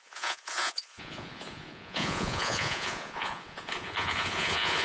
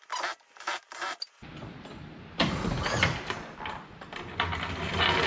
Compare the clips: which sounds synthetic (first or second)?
first